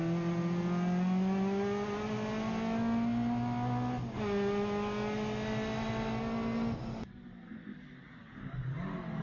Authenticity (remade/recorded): recorded